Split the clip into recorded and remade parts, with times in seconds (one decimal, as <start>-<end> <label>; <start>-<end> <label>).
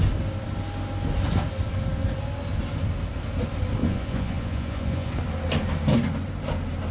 0.0-3.8 recorded; 3.8-5.1 remade; 5.1-6.9 recorded